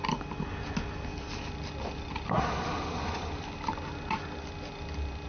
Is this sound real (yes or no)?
yes